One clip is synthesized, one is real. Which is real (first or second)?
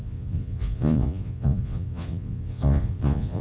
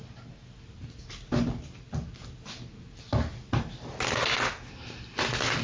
second